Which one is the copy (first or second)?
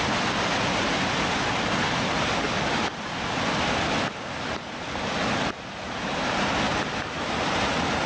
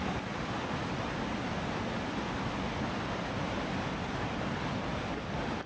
second